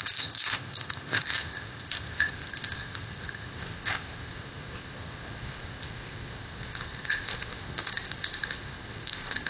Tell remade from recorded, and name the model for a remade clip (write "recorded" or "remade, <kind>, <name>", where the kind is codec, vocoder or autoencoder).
remade, codec, ZipCodec